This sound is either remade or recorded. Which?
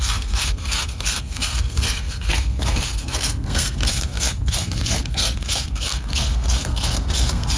remade